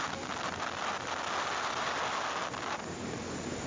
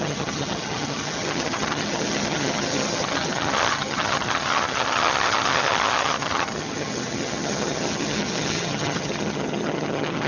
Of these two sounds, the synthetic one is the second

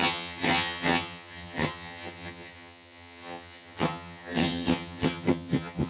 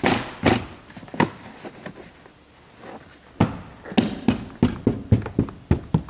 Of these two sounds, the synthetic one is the first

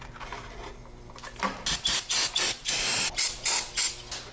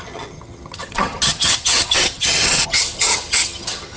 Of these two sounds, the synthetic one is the second